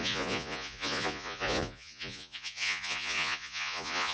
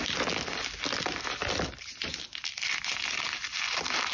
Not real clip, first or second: first